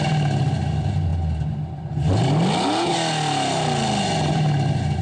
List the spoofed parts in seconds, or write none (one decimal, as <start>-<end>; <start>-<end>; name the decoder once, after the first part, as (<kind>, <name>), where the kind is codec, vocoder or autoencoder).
none